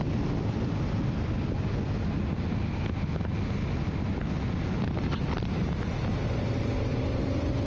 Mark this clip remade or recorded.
recorded